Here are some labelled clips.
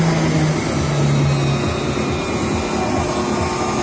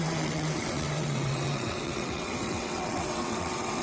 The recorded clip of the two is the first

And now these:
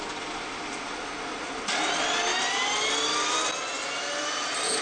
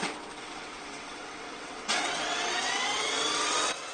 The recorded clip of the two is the first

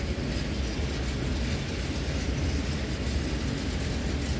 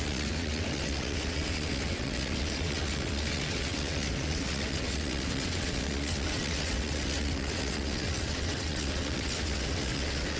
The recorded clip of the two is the first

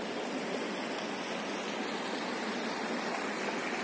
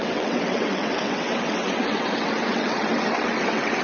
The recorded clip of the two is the first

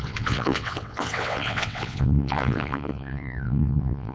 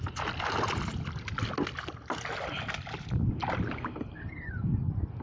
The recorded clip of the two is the second